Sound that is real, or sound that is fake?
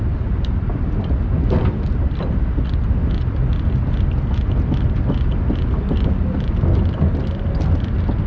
real